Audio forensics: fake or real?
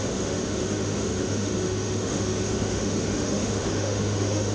fake